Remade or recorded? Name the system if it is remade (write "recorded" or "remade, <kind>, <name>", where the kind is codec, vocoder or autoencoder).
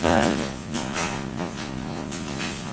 remade, vocoder, Vocos